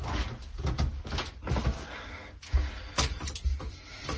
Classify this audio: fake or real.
real